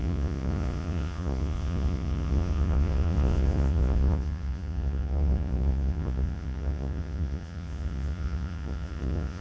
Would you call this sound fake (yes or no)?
yes